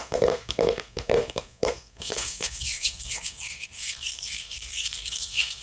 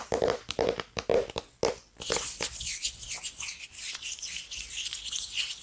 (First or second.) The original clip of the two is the second